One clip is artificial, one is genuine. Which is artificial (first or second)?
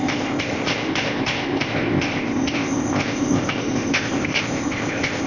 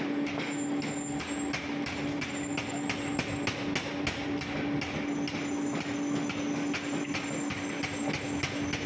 first